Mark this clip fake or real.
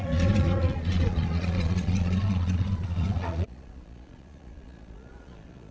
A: fake